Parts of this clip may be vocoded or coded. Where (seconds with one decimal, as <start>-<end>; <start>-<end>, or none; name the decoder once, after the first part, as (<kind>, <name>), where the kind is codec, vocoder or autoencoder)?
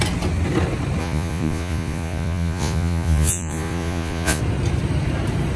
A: 1.0-4.4 (vocoder, Vocos)